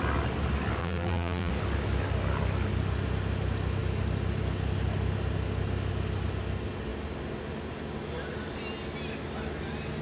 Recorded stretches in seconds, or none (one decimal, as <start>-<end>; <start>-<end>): 0.0-0.8; 1.5-10.0